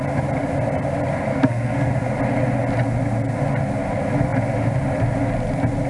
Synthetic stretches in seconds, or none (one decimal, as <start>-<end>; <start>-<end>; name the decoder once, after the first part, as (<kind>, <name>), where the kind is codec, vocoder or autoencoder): 1.3-1.9 (codec, SNAC)